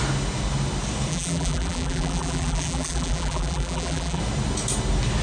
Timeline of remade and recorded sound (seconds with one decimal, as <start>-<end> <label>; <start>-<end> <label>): 0.0-1.1 recorded; 1.1-4.2 remade; 4.2-5.2 recorded